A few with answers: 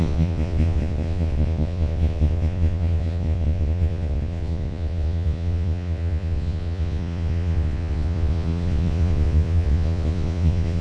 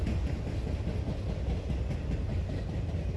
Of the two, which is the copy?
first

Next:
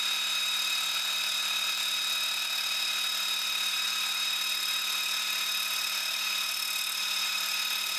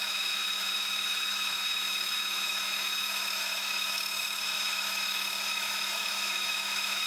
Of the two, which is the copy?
second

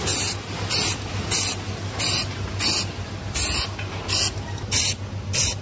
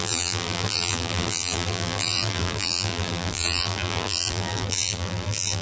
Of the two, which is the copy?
second